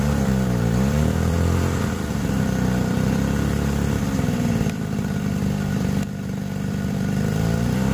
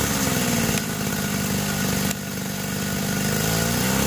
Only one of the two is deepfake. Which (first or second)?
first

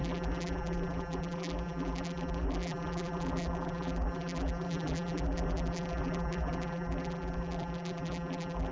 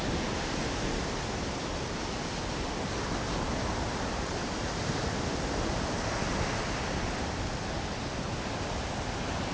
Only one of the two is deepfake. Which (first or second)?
first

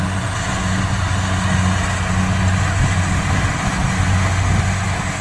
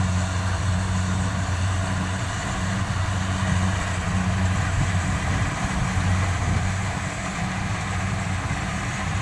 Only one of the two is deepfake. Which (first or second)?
second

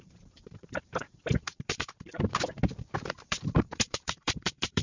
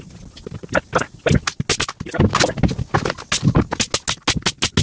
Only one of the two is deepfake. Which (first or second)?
first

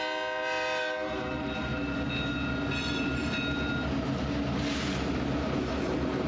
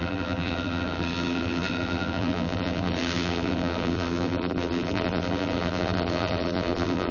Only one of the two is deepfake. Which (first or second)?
second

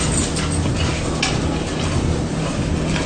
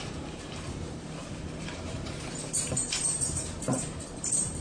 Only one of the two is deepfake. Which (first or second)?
second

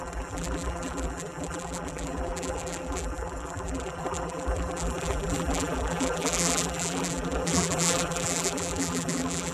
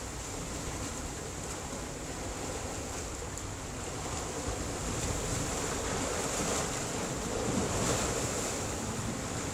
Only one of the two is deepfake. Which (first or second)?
first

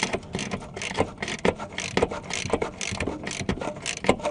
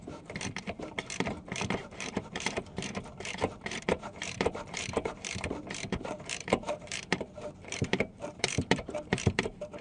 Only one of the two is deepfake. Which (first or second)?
second